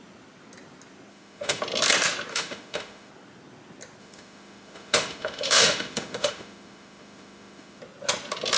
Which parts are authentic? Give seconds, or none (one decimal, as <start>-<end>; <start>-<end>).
0.0-1.1; 1.6-2.3; 3.1-4.0; 7.8-8.6